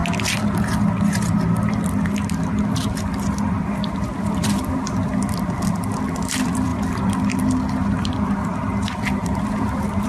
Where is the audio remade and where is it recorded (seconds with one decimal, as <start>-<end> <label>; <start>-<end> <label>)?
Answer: 0.0-3.5 recorded; 3.5-10.1 remade